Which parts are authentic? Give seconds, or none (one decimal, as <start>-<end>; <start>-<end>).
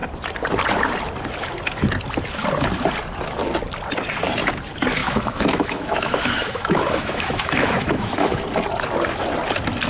0.0-5.0; 8.4-9.9